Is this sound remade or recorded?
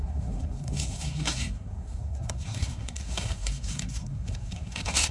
remade